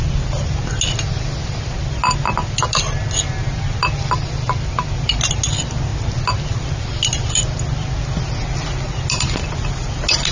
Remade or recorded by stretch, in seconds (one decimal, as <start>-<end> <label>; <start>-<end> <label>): 0.0-10.3 recorded

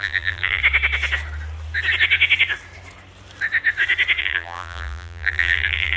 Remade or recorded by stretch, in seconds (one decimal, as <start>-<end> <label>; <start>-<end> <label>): 0.0-0.6 remade; 0.6-4.2 recorded; 4.2-6.0 remade

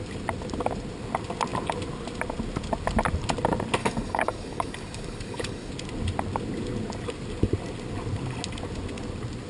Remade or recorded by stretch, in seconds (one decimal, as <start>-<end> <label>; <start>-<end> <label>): 0.0-3.8 recorded; 3.8-5.7 remade; 5.7-9.5 recorded

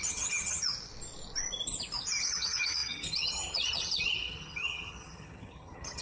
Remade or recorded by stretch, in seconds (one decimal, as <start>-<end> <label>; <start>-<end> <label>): 0.0-0.6 remade; 0.6-2.2 recorded; 2.2-6.0 remade

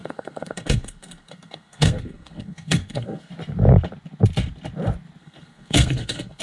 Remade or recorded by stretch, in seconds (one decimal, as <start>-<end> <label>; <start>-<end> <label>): 0.0-3.3 remade; 3.3-5.2 recorded; 5.2-6.4 remade

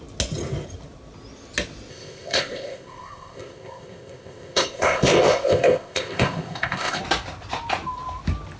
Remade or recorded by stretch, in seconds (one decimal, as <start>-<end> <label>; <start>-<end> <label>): 0.0-1.9 recorded; 1.9-7.0 remade; 7.0-8.6 recorded

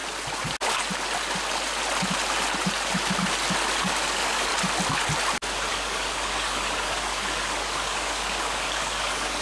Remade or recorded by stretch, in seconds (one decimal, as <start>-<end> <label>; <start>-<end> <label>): 0.0-3.8 recorded; 3.8-4.5 remade; 4.5-5.7 recorded; 5.7-9.4 remade

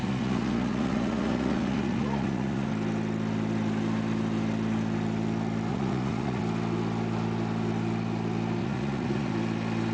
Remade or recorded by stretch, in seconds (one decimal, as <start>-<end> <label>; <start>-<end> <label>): 0.0-2.7 remade; 2.7-5.7 recorded; 5.7-6.4 remade; 6.4-8.6 recorded; 8.6-9.3 remade; 9.3-9.9 recorded